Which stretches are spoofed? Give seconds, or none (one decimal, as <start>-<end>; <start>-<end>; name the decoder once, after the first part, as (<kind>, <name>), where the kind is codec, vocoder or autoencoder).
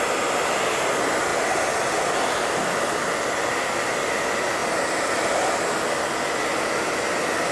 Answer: none